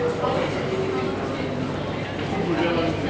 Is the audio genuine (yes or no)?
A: yes